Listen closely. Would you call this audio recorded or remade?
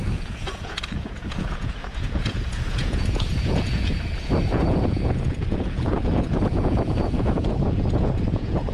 remade